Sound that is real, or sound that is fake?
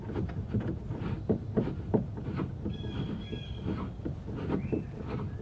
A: real